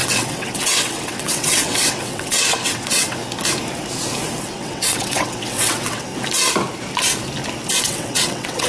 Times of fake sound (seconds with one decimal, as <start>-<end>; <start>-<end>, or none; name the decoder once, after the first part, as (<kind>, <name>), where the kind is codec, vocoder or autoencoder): 0.0-3.2 (vocoder, WaveNeXt); 4.4-6.1; 7.8-8.7

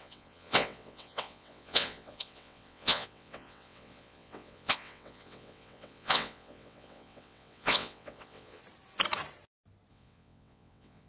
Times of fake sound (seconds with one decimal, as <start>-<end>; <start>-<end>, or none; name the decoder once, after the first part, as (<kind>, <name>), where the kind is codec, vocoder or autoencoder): 0.0-8.6 (vocoder, WaveNeXt); 9.9-11.1

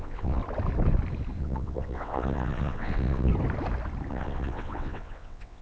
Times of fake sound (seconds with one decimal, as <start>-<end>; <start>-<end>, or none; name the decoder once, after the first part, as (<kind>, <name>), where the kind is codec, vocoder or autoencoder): 0.0-0.4 (vocoder, WaveNeXt); 1.4-3.3; 4.1-5.6